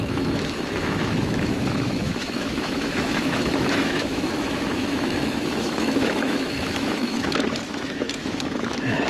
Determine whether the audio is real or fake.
fake